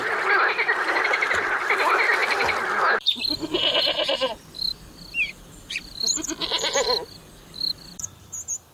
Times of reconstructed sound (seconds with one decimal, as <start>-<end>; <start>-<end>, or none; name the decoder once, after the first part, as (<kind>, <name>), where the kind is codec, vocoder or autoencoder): 0.0-8.7 (vocoder, BigVGAN v2)